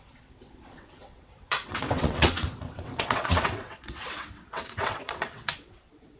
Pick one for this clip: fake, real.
fake